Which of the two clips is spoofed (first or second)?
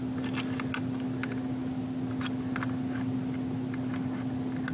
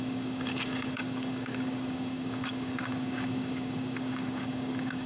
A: second